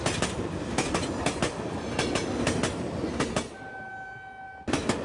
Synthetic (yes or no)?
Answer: no